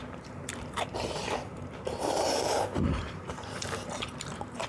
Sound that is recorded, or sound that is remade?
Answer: remade